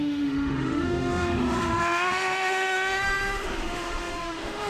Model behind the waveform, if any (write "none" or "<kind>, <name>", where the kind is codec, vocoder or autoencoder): autoencoder, DAC-VAE